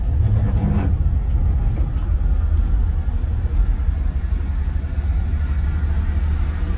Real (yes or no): yes